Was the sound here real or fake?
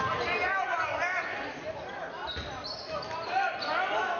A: real